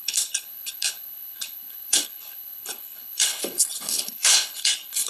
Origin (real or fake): fake